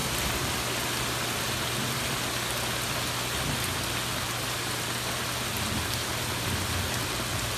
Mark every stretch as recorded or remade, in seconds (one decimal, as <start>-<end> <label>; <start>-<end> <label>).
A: 0.0-7.6 recorded